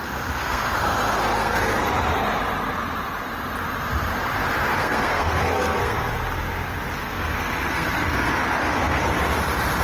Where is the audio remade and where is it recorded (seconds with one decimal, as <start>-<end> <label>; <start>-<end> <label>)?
0.0-0.4 recorded; 0.4-1.8 remade; 1.8-4.8 recorded; 4.8-6.1 remade; 6.1-7.0 recorded; 7.0-8.3 remade; 8.3-9.8 recorded